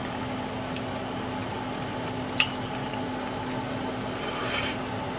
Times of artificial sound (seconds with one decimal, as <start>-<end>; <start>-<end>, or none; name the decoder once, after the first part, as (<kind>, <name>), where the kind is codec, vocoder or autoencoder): none